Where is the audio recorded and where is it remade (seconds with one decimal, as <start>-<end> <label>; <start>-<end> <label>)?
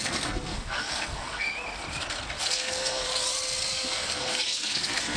0.0-1.5 remade; 1.5-2.4 recorded; 2.4-3.1 remade; 3.1-3.7 recorded; 3.7-5.2 remade